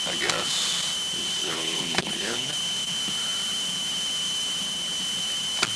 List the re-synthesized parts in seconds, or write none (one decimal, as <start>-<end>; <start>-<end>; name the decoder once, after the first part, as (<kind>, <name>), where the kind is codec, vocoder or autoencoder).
1.4-2.5 (codec, HILCodec)